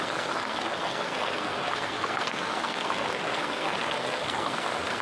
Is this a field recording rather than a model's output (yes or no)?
no